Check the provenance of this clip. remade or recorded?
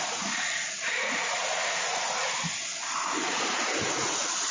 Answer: remade